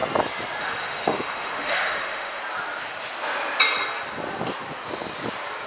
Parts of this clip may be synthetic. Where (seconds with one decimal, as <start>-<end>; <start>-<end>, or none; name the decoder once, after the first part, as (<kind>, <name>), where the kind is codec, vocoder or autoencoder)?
0.6-2.4 (autoencoder, DAC-VAE)